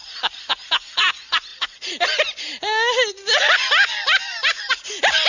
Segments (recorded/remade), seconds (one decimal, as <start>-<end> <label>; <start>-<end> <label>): 0.0-5.3 recorded